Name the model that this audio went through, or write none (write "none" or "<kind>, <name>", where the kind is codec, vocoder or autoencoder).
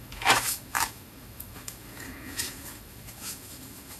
autoencoder, DAC-VAE